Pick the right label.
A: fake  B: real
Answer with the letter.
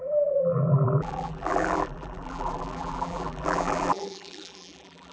A